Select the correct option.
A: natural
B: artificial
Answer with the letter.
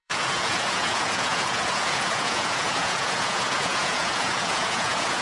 B